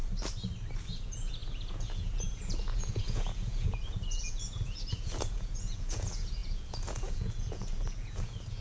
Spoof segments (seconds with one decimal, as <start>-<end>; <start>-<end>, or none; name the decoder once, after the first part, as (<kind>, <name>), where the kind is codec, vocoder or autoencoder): 0.8-8.6 (vocoder, Vocos)